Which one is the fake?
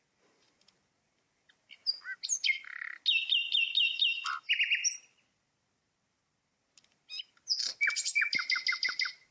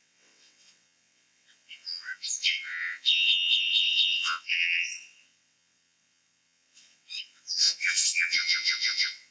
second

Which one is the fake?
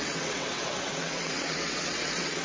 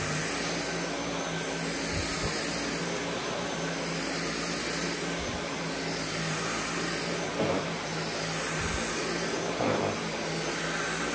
first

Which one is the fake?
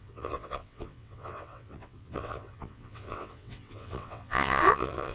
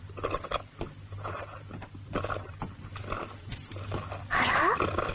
first